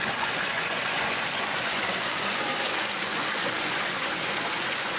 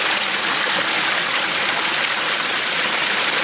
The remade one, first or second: first